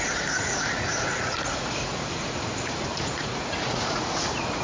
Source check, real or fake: fake